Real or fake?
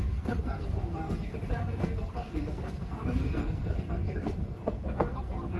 fake